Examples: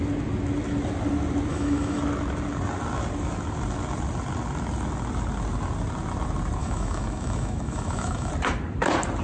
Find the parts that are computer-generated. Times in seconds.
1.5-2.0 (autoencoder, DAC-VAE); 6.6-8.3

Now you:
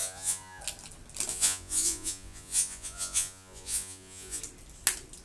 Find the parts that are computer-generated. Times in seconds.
0.0-0.6 (vocoder, Vocos); 1.3-4.4

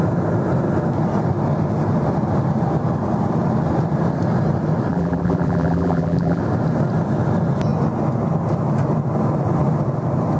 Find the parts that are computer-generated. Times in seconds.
4.9-6.4 (vocoder, BigVGAN v2)

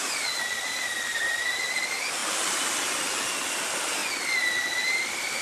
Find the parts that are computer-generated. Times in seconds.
0.7-2.2 (vocoder, BigVGAN v2); 3.4-4.0; 4.7-5.4

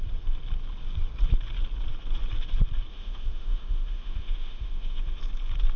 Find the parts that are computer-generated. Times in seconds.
2.9-5.2 (autoencoder, DAC-VAE)

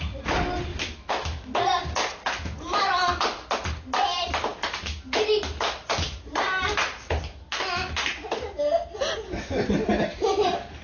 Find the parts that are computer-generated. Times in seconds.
0.7-1.6 (autoencoder, DAC-VAE)

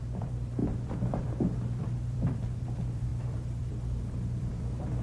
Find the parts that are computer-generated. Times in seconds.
0.0-5.0 (vocoder, BigVGAN v2)

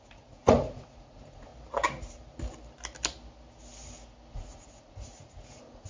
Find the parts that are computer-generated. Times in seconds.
0.0-1.5 (vocoder, Vocos); 4.3-5.9